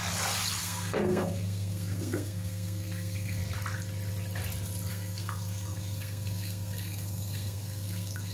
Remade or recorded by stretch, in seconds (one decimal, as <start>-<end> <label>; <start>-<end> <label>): 0.0-0.6 recorded; 0.6-3.4 remade; 3.4-4.9 recorded; 4.9-8.3 remade